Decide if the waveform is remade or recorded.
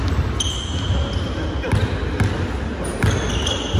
recorded